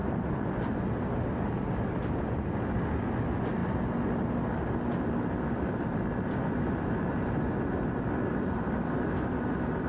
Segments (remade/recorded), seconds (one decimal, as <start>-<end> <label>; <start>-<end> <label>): 0.0-9.9 recorded